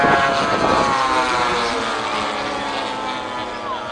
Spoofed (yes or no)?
no